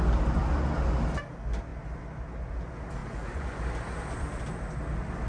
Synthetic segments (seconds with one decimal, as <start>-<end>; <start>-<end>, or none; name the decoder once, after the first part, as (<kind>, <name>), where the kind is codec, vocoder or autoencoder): 3.0-3.6 (vocoder, Vocos)